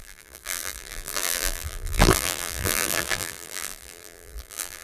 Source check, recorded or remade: remade